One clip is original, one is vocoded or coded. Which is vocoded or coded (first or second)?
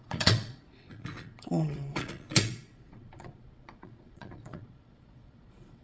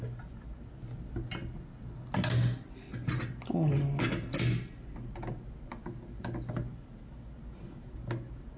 first